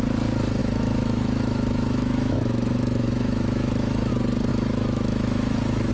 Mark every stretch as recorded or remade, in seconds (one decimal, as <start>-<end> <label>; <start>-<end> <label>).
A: 0.0-0.6 recorded; 0.6-4.1 remade; 4.1-4.5 recorded; 4.5-5.9 remade